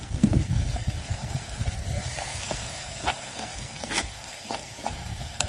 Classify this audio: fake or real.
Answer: fake